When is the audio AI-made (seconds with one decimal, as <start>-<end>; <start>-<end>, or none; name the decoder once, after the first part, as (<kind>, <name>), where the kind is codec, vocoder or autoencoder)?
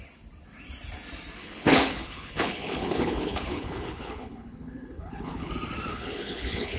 1.4-5.5 (codec, HILCodec); 5.9-6.8